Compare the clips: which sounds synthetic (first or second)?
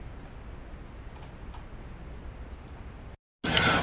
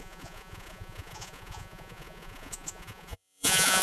second